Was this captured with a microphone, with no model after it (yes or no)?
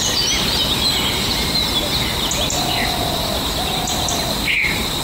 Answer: yes